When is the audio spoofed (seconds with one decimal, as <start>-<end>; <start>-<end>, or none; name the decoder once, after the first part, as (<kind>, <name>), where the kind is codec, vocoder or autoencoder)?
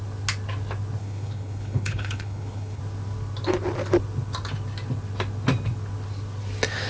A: 1.0-2.8 (codec, HILCodec)